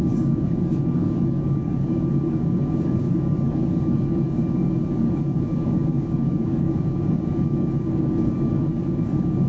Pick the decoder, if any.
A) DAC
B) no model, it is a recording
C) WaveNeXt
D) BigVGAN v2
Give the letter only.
A